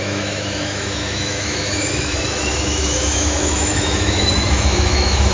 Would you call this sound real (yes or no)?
no